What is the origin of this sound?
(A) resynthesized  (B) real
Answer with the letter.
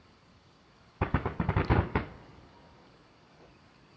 A